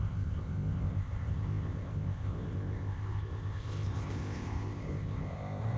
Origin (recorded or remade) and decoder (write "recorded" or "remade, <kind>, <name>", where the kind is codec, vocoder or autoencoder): remade, codec, ZipCodec